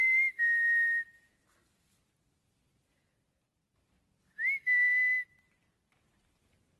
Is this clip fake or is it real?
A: real